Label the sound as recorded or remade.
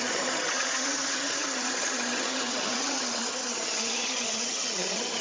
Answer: remade